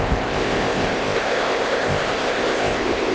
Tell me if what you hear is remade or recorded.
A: remade